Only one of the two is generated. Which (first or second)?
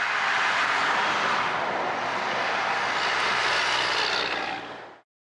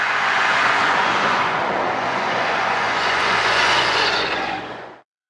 second